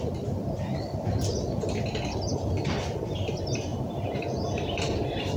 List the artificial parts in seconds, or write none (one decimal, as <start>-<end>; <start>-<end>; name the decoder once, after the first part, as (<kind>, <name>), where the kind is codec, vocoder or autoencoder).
3.7-4.2 (vocoder, BigVGAN v2)